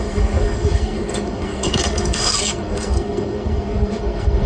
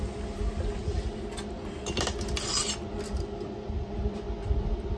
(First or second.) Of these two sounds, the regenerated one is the first